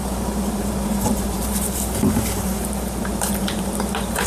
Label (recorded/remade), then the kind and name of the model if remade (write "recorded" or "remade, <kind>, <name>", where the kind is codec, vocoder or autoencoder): remade, vocoder, BigVGAN v2